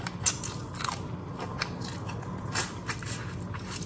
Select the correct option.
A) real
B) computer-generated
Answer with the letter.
A